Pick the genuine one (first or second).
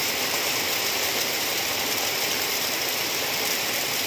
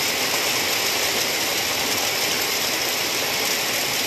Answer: second